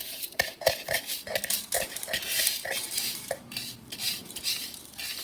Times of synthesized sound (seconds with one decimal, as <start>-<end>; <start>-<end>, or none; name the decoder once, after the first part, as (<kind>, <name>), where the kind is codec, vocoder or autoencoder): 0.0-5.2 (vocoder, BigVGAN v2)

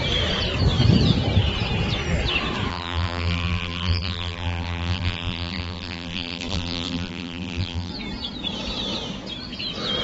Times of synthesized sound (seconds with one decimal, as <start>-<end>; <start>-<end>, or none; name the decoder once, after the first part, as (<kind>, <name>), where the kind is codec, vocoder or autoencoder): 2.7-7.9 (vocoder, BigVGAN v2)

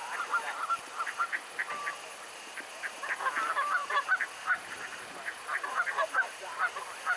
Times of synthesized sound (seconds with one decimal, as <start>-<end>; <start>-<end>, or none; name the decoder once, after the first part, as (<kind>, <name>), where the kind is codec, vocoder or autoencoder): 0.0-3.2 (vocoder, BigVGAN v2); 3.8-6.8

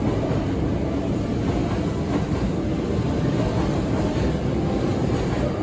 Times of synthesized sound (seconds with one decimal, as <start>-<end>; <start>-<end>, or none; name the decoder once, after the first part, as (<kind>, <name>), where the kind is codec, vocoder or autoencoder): 4.9-5.6 (vocoder, BigVGAN v2)